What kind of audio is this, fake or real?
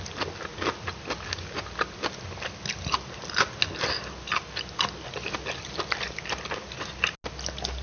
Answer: real